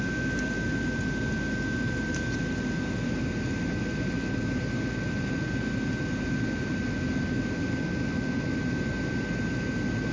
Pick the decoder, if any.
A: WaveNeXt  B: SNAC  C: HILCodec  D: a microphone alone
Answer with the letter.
D